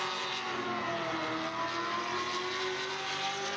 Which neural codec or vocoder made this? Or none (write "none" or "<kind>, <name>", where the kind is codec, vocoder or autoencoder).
none